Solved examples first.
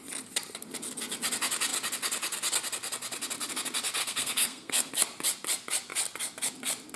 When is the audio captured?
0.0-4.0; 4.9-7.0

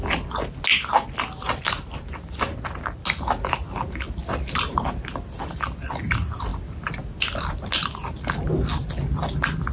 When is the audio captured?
0.0-9.7

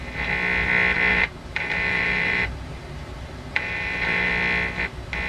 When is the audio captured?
0.0-1.1; 4.3-5.3